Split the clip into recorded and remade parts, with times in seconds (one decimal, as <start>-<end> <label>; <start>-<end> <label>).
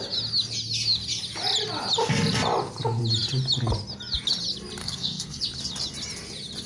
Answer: 0.0-4.8 recorded; 4.8-5.4 remade; 5.4-6.7 recorded